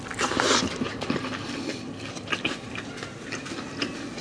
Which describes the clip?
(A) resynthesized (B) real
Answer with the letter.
B